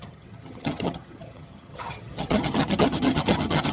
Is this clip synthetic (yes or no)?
yes